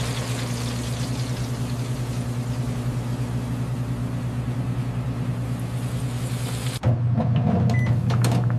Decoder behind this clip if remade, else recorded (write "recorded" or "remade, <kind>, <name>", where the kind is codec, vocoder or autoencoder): recorded